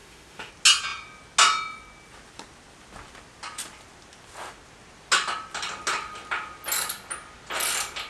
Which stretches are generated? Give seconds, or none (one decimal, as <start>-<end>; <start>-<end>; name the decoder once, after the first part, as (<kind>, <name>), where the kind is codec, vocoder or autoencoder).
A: 0.0-0.5 (autoencoder, DAC-VAE)

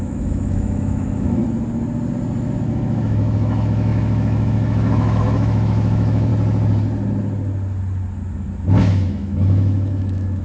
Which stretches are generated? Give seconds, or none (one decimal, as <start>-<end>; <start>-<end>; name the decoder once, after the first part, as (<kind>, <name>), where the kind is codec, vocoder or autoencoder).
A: 0.0-1.4 (autoencoder, DAC-VAE); 2.6-6.3; 8.8-10.4

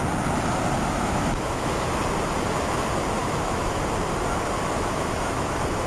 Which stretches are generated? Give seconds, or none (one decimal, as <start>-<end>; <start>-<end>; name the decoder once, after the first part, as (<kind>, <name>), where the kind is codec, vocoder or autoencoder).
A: 0.8-2.0 (autoencoder, DAC-VAE); 3.2-3.8; 4.6-5.9

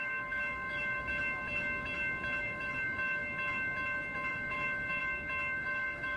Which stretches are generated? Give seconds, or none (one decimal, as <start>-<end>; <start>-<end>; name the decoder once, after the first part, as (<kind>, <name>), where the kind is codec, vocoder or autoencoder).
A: 0.0-1.1 (autoencoder, DAC-VAE); 2.4-3.2; 4.3-5.0; 5.6-6.2

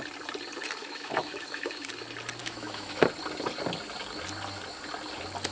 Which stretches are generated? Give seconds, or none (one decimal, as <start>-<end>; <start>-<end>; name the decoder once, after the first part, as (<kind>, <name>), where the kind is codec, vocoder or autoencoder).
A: 0.8-1.9 (autoencoder, DAC-VAE); 2.4-3.0